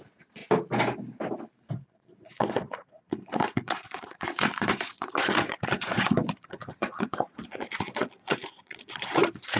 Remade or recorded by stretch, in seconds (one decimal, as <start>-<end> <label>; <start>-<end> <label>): 0.0-0.4 remade; 0.4-2.2 recorded; 2.2-9.6 remade